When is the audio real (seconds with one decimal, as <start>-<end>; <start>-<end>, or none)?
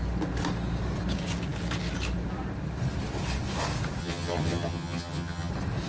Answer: 0.0-4.0; 5.5-5.9